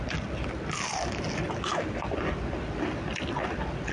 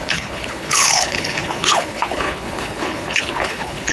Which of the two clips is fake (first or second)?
second